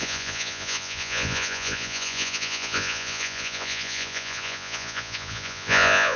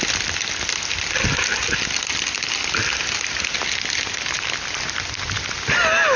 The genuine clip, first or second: second